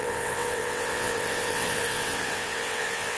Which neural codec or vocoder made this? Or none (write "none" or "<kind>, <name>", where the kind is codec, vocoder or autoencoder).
vocoder, WaveNeXt